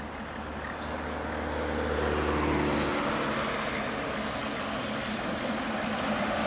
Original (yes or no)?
yes